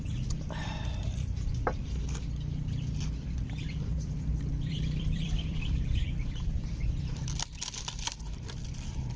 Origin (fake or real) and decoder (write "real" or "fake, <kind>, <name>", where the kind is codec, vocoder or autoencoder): fake, vocoder, BigVGAN v2